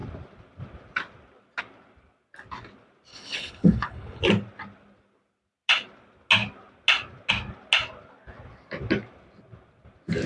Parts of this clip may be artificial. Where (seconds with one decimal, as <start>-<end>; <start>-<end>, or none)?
3.1-4.2